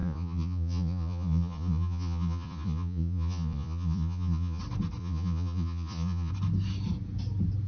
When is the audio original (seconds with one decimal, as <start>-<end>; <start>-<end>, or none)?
4.6-5.0; 6.3-7.7